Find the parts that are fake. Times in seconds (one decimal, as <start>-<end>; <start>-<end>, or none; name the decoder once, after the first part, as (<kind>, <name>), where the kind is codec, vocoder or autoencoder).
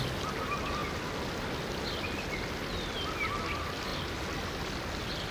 none